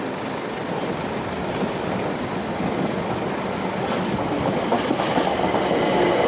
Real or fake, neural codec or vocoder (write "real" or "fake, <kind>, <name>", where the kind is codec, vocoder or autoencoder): real